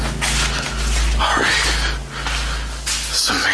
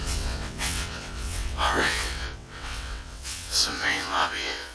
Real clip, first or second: first